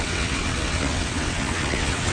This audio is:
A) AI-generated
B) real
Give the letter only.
A